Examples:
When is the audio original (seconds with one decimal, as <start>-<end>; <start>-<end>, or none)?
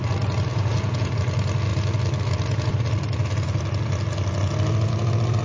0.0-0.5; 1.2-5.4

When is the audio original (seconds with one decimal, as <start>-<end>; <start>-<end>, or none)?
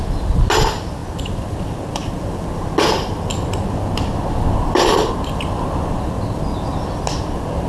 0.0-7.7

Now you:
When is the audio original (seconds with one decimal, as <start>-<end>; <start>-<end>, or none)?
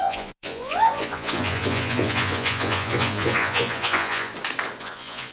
4.3-4.8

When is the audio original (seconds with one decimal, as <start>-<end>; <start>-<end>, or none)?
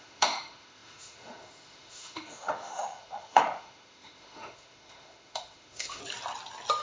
6.0-6.8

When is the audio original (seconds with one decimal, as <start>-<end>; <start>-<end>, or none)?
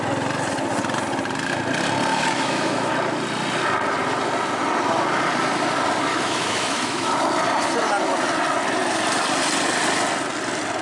0.0-2.1; 2.9-6.1; 7.1-10.8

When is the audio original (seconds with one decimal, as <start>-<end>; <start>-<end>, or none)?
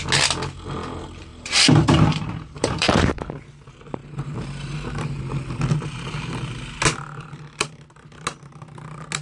0.0-1.3; 3.2-4.0; 5.2-9.2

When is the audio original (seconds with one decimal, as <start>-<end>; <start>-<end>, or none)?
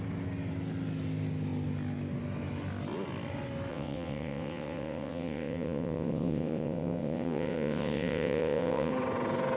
0.0-3.7; 8.9-9.6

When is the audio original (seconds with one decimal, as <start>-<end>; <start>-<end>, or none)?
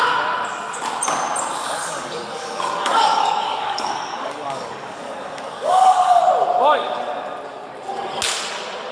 0.0-1.6; 6.2-8.9